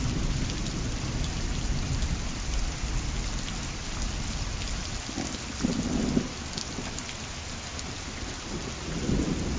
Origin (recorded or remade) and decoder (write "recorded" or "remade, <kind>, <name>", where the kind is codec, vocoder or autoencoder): recorded